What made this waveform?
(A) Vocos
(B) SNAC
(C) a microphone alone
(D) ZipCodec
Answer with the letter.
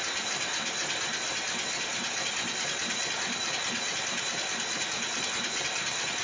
C